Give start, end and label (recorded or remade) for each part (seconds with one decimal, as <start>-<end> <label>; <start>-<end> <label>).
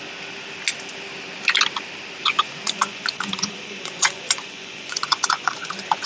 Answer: 0.0-2.2 recorded; 2.2-6.1 remade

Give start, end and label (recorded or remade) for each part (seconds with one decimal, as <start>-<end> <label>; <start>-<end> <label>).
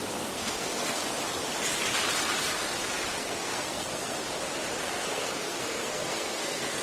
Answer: 0.0-1.0 remade; 1.0-3.1 recorded; 3.1-4.2 remade; 4.2-4.8 recorded; 4.8-6.8 remade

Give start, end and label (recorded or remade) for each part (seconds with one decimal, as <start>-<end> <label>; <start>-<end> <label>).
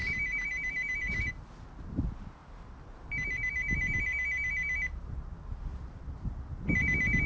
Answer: 0.0-1.3 remade; 1.3-2.4 recorded; 2.4-3.1 remade; 3.1-7.3 recorded